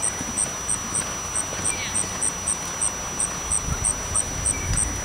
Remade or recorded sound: recorded